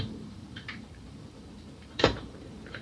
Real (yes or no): no